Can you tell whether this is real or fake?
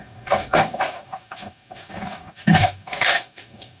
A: fake